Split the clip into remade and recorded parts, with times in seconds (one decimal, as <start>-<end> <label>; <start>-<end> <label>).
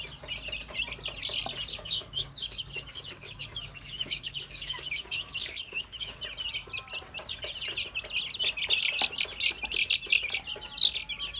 0.0-1.7 recorded; 1.7-6.2 remade; 6.2-11.4 recorded